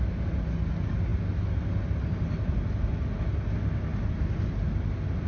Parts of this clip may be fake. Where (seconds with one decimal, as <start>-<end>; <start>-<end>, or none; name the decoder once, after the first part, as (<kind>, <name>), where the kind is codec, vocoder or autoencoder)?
none